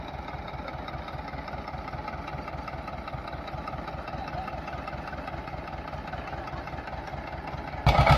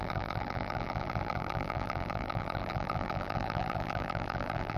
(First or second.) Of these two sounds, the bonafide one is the first